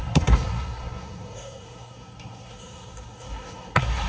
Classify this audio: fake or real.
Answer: fake